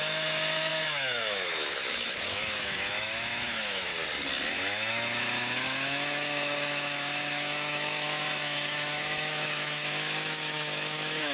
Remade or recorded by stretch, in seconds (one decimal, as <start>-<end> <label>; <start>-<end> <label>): 0.0-3.9 remade; 3.9-4.5 recorded; 4.5-11.3 remade